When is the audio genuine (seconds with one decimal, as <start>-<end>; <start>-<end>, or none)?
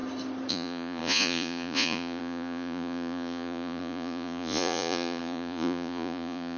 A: 0.0-0.5